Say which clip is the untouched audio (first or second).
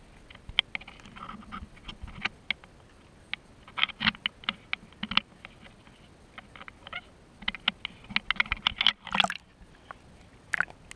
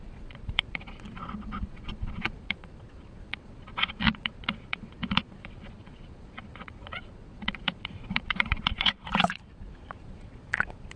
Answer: first